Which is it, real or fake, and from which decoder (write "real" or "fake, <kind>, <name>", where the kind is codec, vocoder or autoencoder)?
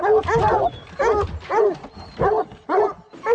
real